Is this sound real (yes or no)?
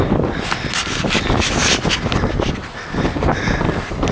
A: yes